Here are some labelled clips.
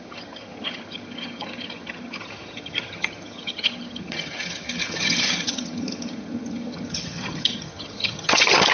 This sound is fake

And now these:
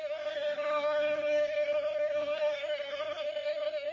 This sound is fake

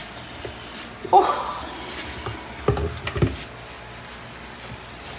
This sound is real